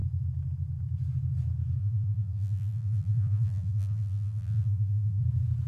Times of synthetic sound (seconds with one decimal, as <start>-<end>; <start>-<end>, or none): 1.8-5.2